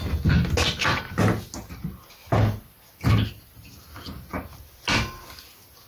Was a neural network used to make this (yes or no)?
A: no